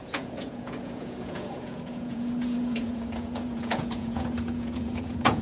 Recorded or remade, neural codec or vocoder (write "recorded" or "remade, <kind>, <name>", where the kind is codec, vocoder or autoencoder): remade, vocoder, Vocos